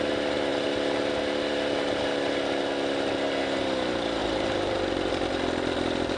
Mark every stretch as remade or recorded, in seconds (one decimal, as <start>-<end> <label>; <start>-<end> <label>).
0.0-4.2 recorded; 4.2-5.1 remade; 5.1-6.2 recorded

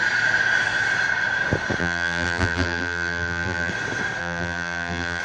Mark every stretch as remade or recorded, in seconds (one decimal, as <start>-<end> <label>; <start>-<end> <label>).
0.0-1.8 recorded; 1.8-3.7 remade; 3.7-4.2 recorded; 4.2-5.2 remade